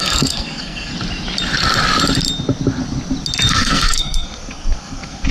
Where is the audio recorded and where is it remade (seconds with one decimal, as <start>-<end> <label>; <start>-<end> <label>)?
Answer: 0.0-0.9 remade; 0.9-3.5 recorded; 3.5-5.3 remade